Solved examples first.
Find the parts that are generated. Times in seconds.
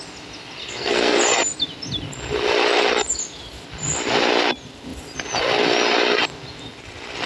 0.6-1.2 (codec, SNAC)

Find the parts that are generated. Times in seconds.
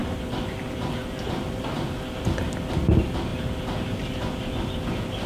none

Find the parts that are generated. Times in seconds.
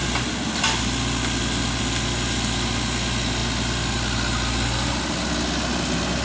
none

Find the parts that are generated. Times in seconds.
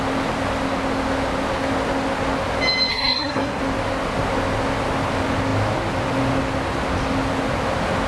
2.9-3.6 (codec, SNAC)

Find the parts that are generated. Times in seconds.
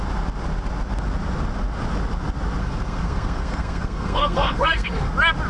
2.6-5.1 (codec, SNAC)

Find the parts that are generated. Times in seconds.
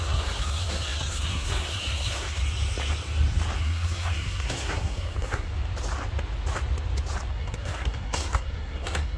0.0-2.4 (codec, SNAC); 3.6-5.5; 7.3-9.2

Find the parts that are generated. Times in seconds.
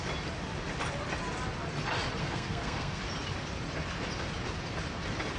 2.2-3.0 (codec, SNAC)